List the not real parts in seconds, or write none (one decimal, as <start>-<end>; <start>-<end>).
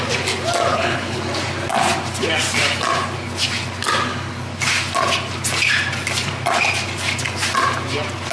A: 0.7-1.2